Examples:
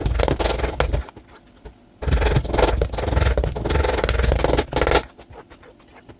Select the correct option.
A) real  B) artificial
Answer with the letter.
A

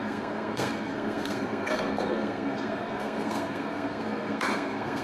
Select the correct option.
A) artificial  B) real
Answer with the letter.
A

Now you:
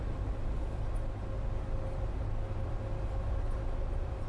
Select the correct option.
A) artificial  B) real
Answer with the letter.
B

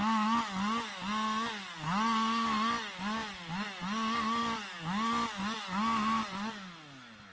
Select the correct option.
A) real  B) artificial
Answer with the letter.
A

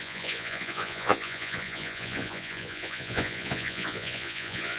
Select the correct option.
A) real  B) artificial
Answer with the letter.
B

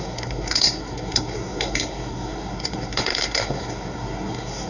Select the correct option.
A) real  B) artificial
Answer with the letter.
B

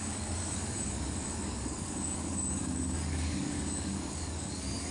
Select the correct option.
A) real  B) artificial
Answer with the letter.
B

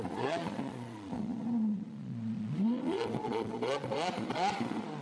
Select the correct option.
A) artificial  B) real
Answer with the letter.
A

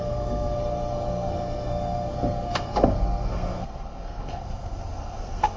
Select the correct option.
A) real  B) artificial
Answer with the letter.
B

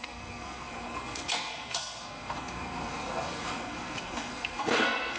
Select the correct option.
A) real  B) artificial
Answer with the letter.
B